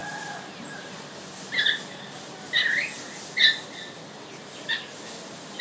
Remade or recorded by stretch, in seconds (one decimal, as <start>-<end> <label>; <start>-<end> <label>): 0.0-5.6 recorded